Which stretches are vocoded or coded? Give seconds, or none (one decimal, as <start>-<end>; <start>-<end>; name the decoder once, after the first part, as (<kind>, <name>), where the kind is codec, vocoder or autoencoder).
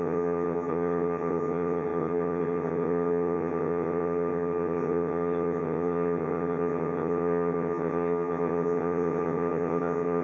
0.0-10.2 (vocoder, HiFi-GAN)